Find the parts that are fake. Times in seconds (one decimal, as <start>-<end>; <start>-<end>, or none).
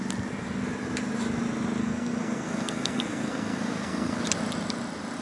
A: 1.8-4.2